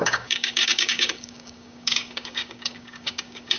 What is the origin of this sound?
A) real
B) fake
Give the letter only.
B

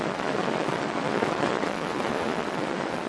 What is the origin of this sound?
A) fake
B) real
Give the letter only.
A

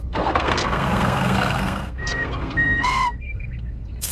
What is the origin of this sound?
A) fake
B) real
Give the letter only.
A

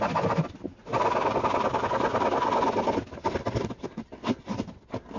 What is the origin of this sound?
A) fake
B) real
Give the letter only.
B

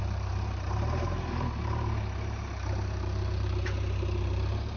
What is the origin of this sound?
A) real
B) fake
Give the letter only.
B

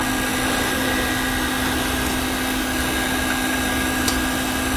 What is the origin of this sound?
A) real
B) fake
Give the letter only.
A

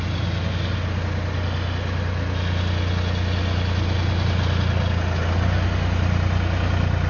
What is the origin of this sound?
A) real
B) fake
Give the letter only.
A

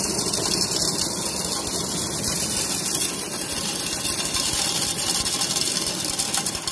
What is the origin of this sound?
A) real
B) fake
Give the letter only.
A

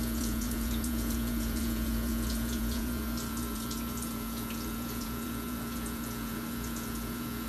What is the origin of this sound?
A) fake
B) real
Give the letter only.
A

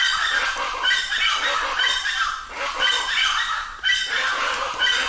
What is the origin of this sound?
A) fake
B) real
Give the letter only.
B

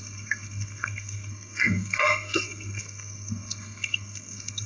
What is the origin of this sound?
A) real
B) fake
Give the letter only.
B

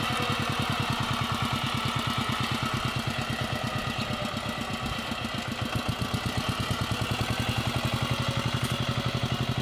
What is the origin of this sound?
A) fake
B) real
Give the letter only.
B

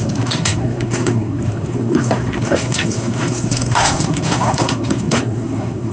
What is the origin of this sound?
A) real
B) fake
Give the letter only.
B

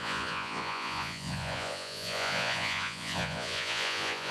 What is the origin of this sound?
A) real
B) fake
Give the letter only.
B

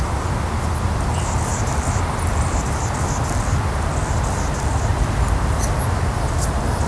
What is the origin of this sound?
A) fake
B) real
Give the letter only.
B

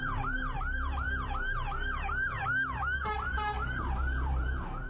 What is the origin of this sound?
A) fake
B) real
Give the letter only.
A